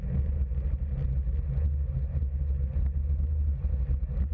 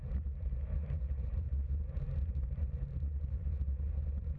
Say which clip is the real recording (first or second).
first